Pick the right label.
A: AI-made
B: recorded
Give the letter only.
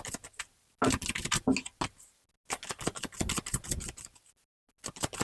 B